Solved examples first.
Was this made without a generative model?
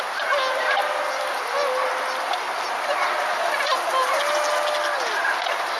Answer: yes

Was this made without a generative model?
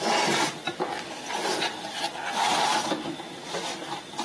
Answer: no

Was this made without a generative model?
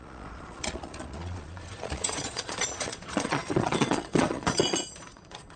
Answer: no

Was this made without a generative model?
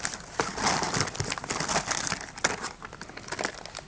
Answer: yes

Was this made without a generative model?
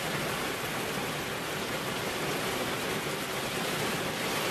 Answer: yes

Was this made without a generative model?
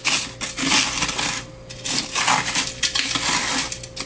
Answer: yes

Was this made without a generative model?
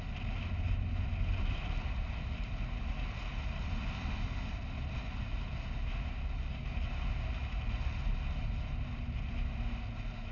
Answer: yes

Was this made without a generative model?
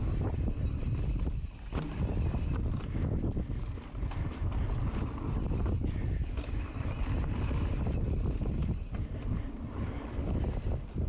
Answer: yes